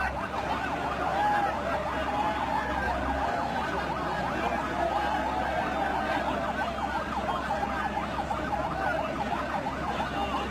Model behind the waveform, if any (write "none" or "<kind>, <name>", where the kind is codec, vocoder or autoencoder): none